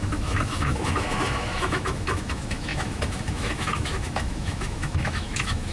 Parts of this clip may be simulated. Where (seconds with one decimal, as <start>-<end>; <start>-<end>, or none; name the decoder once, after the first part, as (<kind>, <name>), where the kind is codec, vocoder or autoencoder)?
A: 0.0-5.7 (autoencoder, DAC-VAE)